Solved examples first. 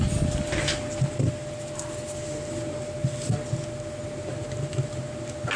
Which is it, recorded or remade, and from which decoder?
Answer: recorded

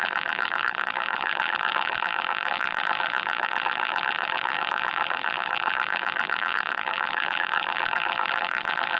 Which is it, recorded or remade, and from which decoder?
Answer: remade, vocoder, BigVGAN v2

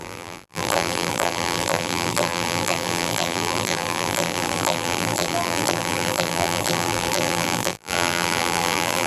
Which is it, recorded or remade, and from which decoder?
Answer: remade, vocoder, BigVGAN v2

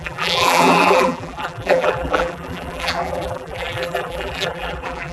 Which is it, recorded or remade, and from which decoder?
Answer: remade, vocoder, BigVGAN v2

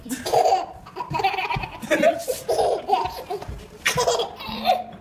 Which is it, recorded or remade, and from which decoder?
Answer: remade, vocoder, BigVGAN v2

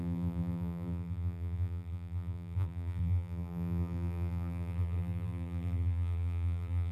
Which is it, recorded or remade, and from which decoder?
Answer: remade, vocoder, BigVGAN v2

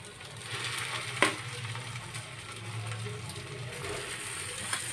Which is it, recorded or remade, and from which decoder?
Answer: recorded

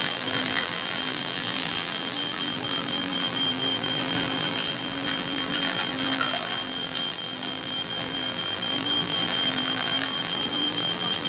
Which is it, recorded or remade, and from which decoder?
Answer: remade, vocoder, BigVGAN v2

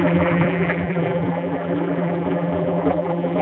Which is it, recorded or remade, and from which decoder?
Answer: remade, vocoder, BigVGAN v2